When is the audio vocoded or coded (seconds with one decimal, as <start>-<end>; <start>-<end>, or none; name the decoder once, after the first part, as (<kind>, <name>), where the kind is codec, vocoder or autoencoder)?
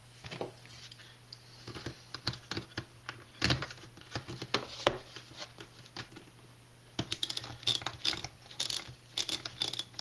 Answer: 0.0-0.5 (autoencoder, DAC-VAE)